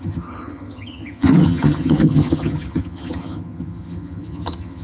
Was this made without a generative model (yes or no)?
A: no